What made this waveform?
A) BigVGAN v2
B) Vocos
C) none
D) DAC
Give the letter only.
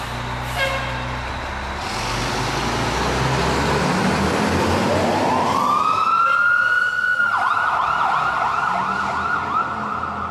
C